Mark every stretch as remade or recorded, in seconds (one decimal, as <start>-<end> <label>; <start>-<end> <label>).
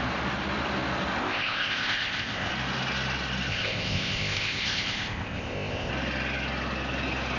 0.0-1.2 recorded; 1.2-2.5 remade; 2.5-3.5 recorded; 3.5-5.9 remade; 5.9-7.4 recorded